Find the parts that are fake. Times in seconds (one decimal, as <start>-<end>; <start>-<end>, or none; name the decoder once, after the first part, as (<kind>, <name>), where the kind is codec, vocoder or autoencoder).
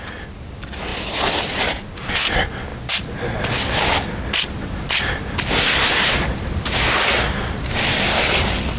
none